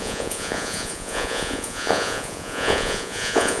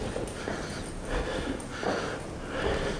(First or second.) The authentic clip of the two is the second